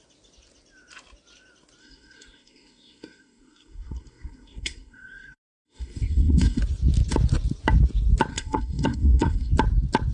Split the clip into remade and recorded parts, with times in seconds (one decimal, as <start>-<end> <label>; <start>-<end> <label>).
0.0-1.8 recorded; 1.8-6.6 remade; 6.6-8.3 recorded; 8.3-9.5 remade; 9.5-10.1 recorded